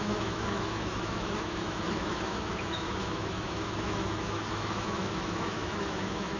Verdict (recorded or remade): remade